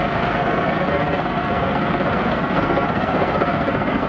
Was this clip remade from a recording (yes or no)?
yes